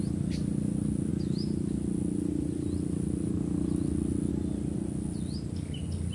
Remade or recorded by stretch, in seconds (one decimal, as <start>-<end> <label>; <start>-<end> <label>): 0.0-6.1 recorded